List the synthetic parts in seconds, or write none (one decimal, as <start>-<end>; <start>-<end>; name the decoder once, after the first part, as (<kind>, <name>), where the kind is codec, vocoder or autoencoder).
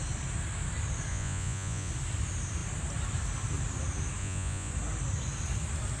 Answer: 1.1-1.9 (vocoder, Vocos); 4.2-4.7